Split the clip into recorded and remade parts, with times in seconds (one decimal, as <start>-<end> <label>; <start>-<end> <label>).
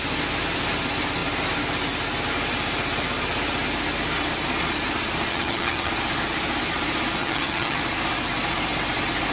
0.0-5.3 recorded; 5.3-5.9 remade; 5.9-7.2 recorded; 7.2-7.8 remade; 7.8-9.3 recorded